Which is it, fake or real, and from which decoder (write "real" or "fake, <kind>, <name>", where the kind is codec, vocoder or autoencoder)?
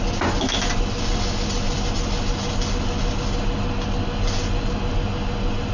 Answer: real